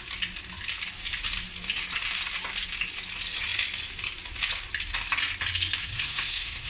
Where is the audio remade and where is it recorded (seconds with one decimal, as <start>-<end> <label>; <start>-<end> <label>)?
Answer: 0.0-5.8 recorded; 5.8-6.7 remade

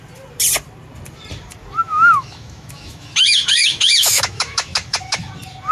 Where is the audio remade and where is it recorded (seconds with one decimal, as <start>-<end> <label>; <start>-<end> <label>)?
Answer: 0.0-1.9 recorded; 1.9-5.3 remade; 5.3-5.7 recorded

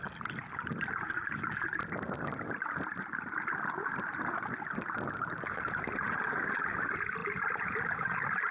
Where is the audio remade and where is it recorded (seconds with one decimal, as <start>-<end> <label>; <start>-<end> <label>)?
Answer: 0.0-8.5 recorded

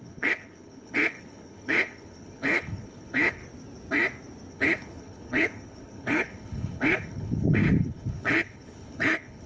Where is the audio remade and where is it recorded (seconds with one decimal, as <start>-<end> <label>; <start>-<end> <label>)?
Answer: 0.0-3.4 remade; 3.4-4.5 recorded; 4.5-9.5 remade

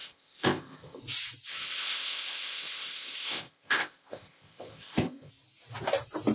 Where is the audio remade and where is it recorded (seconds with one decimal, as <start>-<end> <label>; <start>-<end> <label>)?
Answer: 0.0-1.0 remade; 1.0-1.5 recorded; 1.5-5.3 remade; 5.3-6.3 recorded

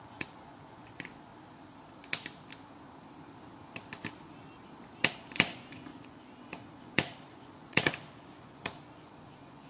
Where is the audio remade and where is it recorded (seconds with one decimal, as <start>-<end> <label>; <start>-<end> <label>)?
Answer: 0.0-1.3 remade; 1.3-5.1 recorded; 5.1-9.7 remade

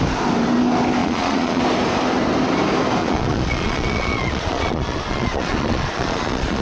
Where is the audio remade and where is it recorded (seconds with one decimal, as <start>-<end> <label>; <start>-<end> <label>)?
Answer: 0.0-1.0 recorded; 1.0-1.6 remade; 1.6-3.0 recorded; 3.0-6.6 remade